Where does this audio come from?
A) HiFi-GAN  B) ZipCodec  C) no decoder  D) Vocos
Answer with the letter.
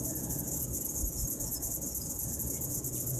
D